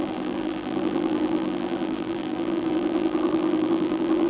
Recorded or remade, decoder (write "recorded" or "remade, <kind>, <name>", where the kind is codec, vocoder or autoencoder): remade, vocoder, BigVGAN v2